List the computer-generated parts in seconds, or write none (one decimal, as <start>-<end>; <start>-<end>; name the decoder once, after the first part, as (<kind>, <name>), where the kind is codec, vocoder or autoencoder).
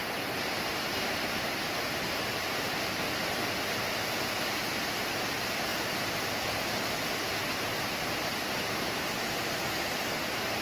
none